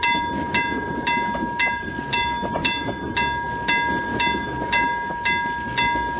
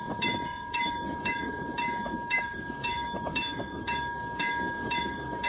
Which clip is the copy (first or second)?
second